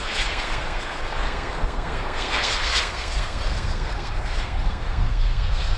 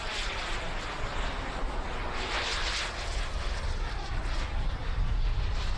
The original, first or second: second